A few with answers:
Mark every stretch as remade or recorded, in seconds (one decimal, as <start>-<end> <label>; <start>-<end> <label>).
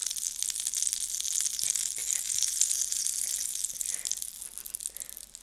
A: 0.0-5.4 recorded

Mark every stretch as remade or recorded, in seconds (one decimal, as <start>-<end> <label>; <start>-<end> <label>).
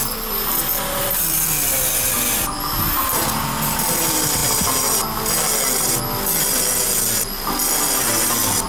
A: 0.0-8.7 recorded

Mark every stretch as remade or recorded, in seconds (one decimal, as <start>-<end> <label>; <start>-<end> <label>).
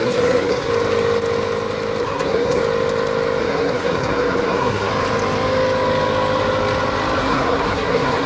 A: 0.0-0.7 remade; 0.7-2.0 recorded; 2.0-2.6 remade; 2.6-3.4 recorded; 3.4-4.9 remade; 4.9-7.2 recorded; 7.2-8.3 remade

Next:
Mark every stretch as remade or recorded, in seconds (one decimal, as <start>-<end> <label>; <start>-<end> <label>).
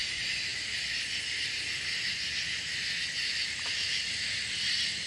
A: 0.0-5.1 recorded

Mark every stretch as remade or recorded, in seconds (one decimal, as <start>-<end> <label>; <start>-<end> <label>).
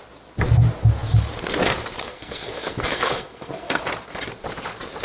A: 0.0-2.0 recorded; 2.0-3.8 remade; 3.8-5.0 recorded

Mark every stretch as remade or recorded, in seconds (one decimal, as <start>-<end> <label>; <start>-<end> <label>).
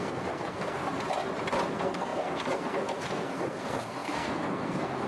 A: 0.0-0.8 remade; 0.8-1.7 recorded; 1.7-5.1 remade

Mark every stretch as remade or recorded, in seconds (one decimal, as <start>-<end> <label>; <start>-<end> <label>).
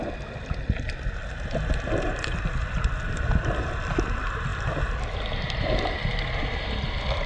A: 0.0-7.3 recorded